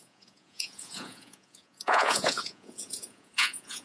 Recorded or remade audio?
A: remade